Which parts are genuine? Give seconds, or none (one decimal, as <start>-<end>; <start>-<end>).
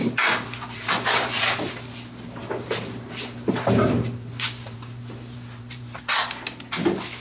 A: 1.7-2.4; 6.0-7.2